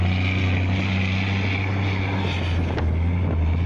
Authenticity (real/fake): real